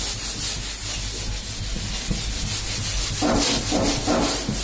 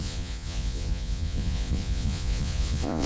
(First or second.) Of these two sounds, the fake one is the second